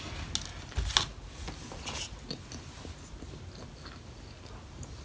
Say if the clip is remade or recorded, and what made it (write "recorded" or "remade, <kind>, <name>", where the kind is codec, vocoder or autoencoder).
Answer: recorded